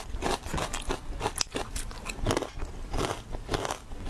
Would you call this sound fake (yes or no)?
no